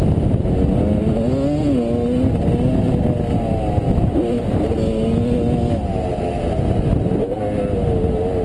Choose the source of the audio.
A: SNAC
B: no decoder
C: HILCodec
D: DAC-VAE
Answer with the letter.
B